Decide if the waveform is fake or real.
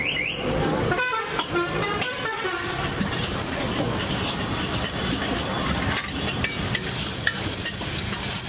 fake